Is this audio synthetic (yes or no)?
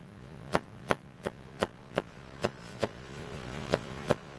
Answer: yes